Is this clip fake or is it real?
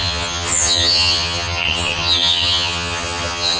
fake